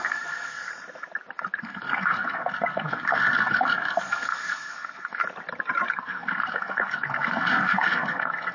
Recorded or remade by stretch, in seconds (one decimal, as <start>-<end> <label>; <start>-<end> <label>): 0.0-0.7 remade; 0.7-1.6 recorded; 1.6-5.2 remade; 5.2-5.9 recorded; 5.9-8.5 remade